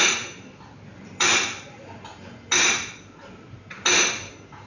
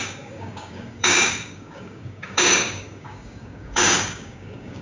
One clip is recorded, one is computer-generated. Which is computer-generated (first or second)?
second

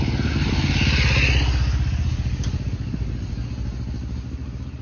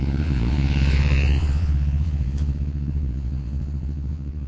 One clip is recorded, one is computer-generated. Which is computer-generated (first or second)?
second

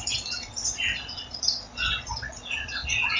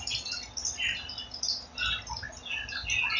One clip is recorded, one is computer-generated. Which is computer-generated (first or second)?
first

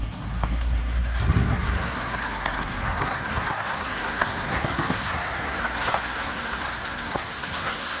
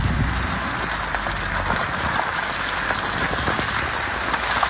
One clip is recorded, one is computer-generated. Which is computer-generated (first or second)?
first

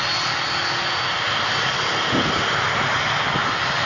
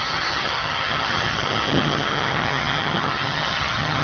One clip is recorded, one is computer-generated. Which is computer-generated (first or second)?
second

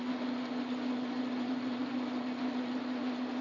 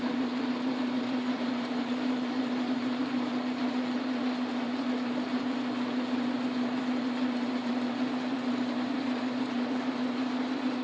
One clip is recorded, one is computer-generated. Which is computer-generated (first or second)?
second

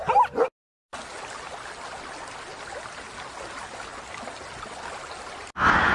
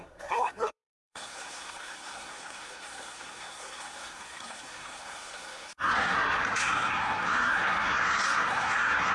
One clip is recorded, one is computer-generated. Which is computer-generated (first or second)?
second